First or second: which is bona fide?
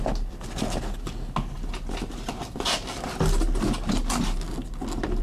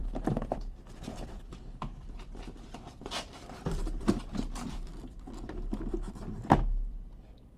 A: first